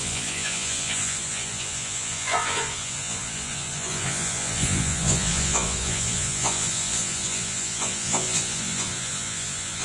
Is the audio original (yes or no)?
no